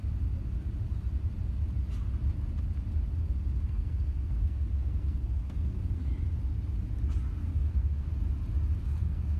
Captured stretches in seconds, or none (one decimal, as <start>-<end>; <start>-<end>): 0.0-3.6; 6.1-7.4; 8.1-8.8